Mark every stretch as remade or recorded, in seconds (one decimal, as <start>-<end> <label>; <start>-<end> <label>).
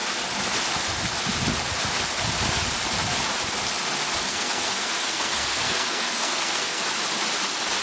0.0-4.3 recorded; 4.3-6.8 remade; 6.8-7.8 recorded